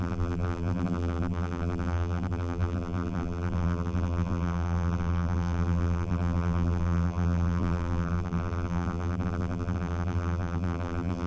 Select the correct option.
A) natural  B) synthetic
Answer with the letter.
B